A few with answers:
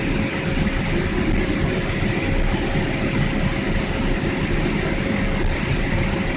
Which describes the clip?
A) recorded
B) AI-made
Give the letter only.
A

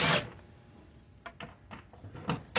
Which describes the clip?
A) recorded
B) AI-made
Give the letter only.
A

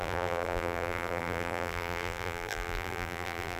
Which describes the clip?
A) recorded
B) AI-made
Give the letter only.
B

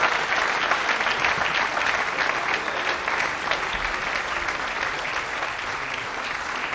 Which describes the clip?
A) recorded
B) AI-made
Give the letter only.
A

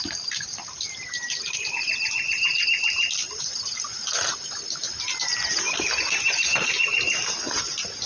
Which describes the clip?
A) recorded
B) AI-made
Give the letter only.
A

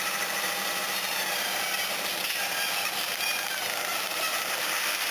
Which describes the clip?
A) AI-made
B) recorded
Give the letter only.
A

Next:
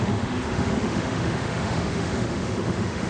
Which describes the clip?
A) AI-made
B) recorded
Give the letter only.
A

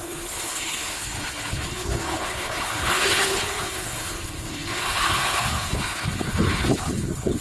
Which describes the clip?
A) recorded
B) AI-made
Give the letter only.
B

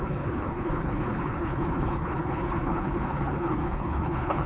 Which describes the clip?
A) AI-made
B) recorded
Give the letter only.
A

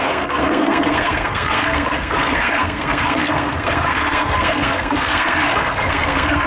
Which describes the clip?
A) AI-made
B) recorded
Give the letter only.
A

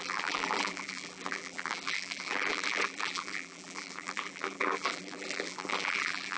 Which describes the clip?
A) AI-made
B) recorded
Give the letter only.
A